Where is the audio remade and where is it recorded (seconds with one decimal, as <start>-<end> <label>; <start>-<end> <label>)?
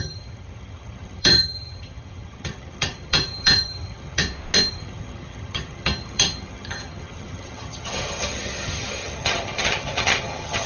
0.0-4.2 remade; 4.2-4.7 recorded; 4.7-10.7 remade